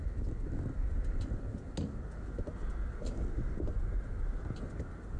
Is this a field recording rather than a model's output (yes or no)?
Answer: yes